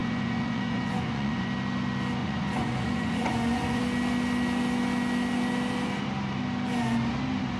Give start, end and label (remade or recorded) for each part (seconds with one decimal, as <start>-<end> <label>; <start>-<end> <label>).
0.0-1.5 remade; 1.5-2.2 recorded; 2.2-3.8 remade; 3.8-7.6 recorded